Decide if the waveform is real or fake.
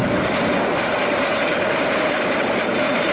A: real